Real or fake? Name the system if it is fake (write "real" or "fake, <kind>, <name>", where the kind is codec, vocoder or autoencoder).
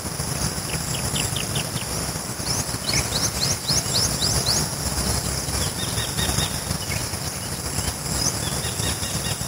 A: real